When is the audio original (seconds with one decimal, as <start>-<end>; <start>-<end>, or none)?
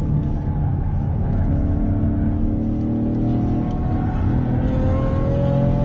0.0-0.7; 1.8-5.8